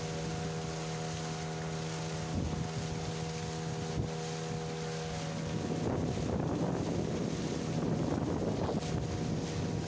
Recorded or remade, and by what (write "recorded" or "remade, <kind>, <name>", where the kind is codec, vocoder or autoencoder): recorded